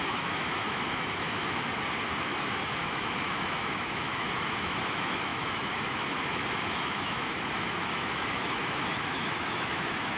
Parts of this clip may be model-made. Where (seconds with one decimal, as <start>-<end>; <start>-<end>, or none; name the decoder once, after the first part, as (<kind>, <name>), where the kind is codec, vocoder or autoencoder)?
0.0-1.7 (autoencoder, DAC-VAE); 2.2-10.2